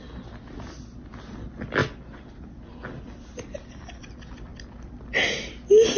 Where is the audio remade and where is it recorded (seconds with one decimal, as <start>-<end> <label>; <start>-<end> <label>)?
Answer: 0.0-6.0 recorded